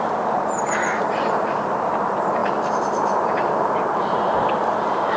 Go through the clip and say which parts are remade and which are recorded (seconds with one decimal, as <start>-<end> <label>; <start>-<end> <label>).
0.0-5.2 remade